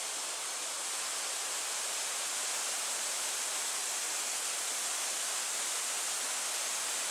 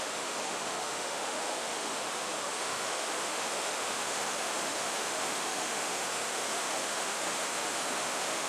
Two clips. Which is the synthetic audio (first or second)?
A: second